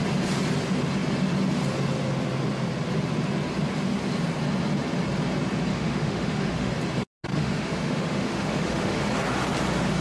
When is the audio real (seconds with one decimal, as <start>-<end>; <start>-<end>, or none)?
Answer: 0.0-5.7; 6.7-7.3; 9.0-10.0